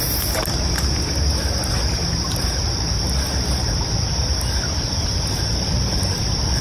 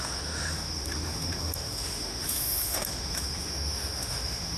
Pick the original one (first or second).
first